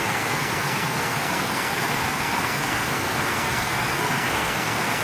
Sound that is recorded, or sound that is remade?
remade